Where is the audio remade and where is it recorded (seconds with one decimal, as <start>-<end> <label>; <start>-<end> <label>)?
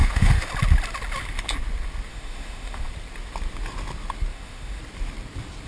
0.0-0.5 remade; 0.5-2.1 recorded; 2.1-2.9 remade; 2.9-4.3 recorded; 4.3-4.8 remade; 4.8-5.7 recorded